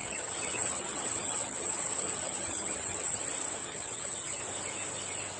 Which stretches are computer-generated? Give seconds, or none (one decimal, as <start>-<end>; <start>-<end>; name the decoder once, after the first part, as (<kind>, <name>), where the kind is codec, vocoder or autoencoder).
0.0-3.2 (vocoder, HiFi-GAN); 3.6-4.4